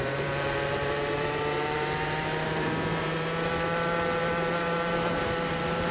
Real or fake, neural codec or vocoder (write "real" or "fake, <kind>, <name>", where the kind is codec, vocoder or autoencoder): fake, vocoder, BigVGAN v2